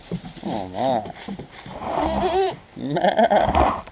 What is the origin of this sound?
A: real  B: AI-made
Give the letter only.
B